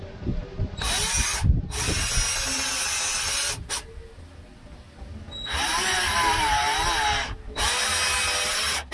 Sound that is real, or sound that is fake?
real